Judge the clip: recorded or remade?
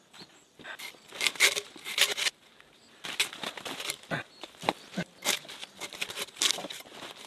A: recorded